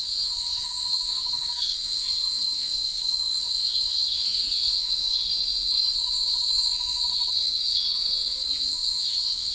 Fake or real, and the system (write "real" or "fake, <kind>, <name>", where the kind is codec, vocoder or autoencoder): fake, codec, SNAC